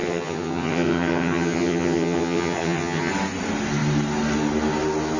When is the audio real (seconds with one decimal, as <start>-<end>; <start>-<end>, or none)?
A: 3.1-5.2